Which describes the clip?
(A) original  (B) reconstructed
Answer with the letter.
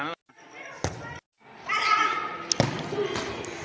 A